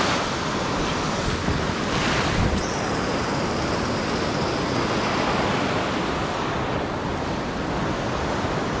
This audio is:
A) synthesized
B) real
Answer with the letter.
A